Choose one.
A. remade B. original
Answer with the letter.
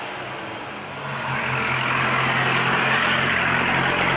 B